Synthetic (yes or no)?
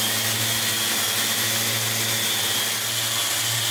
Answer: no